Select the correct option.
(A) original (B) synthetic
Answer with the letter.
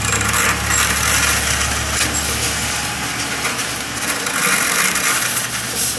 A